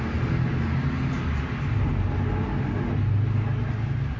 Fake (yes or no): no